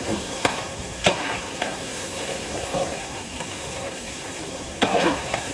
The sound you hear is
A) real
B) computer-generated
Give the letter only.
B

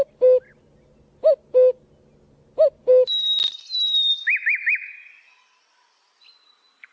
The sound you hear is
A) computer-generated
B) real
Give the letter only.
B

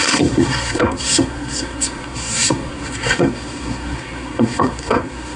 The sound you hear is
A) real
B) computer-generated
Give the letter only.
B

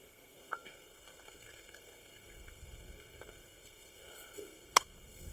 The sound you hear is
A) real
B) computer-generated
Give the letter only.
B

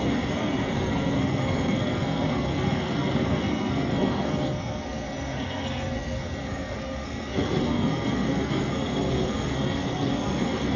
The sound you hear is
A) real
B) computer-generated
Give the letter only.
B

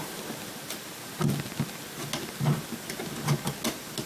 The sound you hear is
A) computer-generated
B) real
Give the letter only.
B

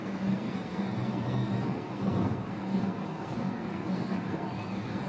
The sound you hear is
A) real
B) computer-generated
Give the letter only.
B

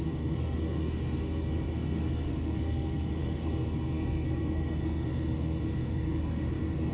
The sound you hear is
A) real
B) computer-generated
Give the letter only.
B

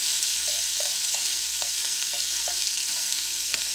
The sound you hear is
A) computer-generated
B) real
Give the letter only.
A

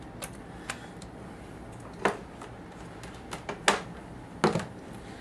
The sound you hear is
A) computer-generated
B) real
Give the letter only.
B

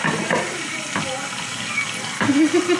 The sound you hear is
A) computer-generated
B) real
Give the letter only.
B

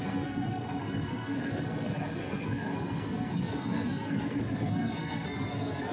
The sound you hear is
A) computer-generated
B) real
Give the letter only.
A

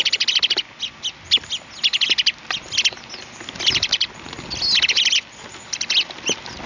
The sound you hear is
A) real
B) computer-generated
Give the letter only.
A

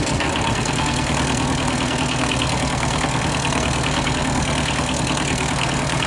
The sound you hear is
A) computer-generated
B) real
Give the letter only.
A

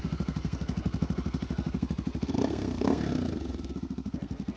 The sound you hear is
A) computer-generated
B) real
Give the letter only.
A